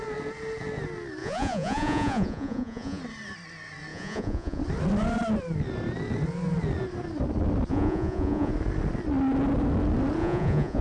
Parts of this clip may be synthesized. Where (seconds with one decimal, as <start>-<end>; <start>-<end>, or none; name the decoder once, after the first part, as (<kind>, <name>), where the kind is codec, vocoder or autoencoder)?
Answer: 1.2-3.0 (vocoder, Vocos); 3.9-4.6; 7.7-8.5; 10.2-10.8